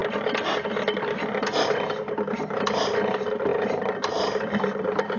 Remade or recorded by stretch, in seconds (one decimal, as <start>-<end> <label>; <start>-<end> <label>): 0.0-3.1 recorded; 3.1-5.2 remade